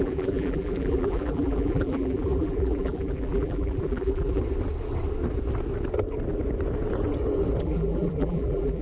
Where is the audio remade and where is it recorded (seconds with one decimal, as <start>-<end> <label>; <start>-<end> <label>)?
0.0-4.4 remade; 4.4-7.6 recorded; 7.6-8.8 remade